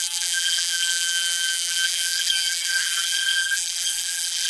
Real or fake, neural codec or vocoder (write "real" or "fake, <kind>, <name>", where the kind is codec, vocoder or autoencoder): fake, vocoder, BigVGAN v2